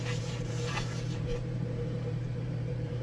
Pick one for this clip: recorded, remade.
remade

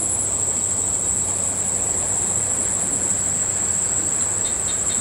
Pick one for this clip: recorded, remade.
recorded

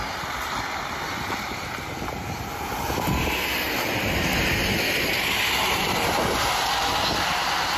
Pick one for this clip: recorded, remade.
recorded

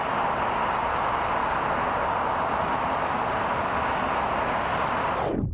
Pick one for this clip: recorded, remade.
remade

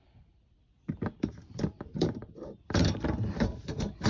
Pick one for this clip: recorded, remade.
remade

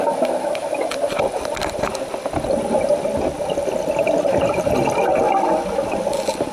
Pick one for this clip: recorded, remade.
recorded